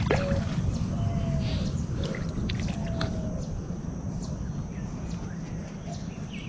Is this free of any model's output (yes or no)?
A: yes